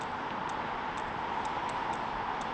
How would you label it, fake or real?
real